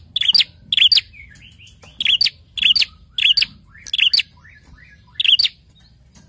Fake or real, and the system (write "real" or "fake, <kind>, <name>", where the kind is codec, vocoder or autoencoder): real